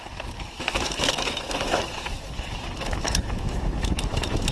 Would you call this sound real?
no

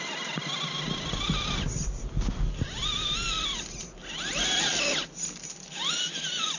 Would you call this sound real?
yes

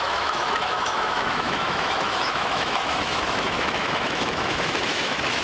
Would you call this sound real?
no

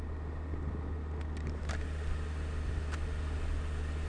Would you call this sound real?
yes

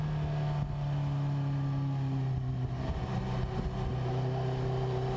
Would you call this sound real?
yes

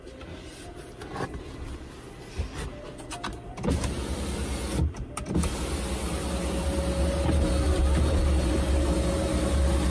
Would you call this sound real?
yes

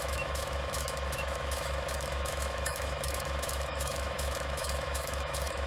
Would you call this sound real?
no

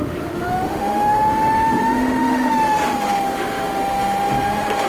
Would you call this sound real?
no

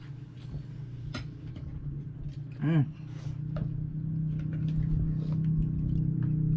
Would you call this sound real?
yes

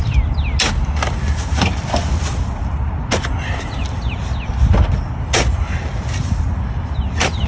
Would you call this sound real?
yes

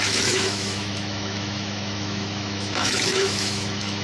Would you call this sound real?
no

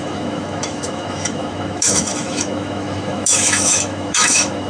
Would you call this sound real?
no